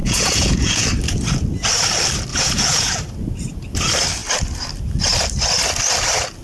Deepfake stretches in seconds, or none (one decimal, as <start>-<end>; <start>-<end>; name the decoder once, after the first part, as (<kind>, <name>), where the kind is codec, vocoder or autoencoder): 0.0-0.9 (vocoder, Vocos); 2.3-3.0